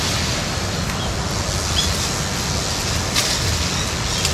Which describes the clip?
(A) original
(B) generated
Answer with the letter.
A